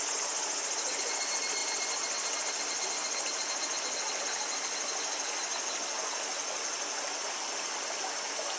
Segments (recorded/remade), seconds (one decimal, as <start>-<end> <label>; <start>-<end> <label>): 0.0-8.6 recorded